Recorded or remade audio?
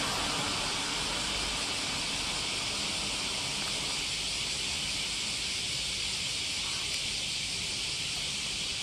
recorded